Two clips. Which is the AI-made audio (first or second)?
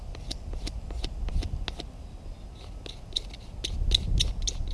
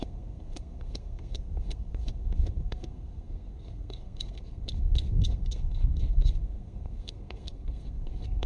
second